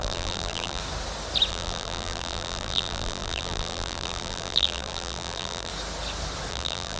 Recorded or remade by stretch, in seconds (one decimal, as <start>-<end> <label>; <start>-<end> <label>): 0.0-0.8 remade; 0.8-1.5 recorded; 1.5-5.7 remade; 5.7-6.5 recorded; 6.5-7.0 remade